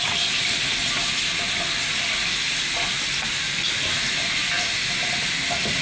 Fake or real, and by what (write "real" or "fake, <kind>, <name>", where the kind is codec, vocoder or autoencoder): real